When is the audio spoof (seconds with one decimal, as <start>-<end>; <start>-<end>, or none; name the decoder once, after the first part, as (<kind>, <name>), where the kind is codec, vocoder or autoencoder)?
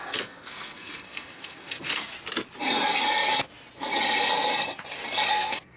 0.0-2.1 (codec, SNAC); 5.3-5.8